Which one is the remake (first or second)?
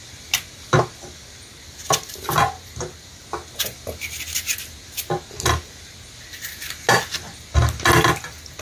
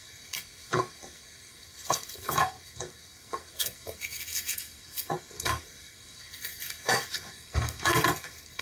second